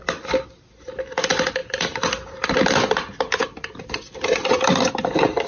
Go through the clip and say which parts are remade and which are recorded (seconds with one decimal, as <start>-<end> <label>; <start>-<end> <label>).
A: 0.0-5.5 recorded